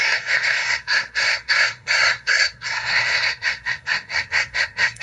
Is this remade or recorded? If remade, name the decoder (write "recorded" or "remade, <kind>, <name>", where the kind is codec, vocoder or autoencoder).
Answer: remade, codec, SNAC